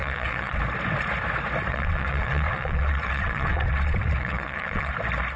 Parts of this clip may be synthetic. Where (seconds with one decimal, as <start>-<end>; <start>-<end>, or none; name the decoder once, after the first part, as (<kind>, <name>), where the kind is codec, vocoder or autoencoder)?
0.0-0.6 (vocoder, WaveNeXt); 1.7-4.9